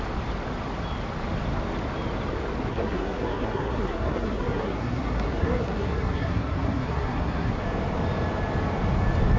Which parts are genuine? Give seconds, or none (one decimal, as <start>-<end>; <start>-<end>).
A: 0.0-2.7; 7.6-9.4